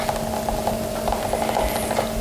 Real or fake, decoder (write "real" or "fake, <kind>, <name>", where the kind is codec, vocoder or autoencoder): real